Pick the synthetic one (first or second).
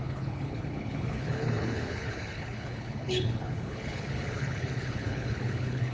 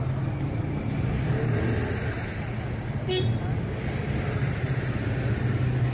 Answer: first